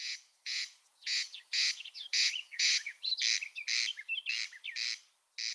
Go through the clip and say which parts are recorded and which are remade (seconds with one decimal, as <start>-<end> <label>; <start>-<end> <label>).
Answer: 0.0-3.1 remade; 3.1-5.5 recorded